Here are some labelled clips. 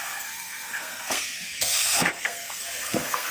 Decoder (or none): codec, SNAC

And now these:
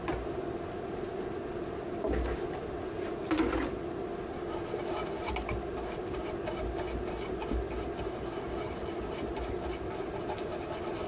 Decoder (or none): none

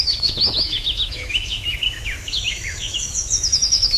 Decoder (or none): autoencoder, DAC-VAE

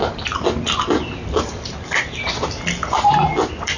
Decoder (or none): none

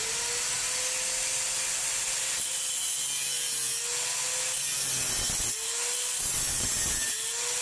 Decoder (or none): none